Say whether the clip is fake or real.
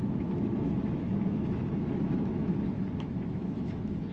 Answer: fake